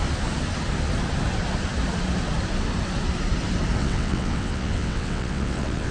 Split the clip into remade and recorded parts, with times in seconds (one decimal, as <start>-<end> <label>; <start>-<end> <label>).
0.0-3.8 recorded; 3.8-5.9 remade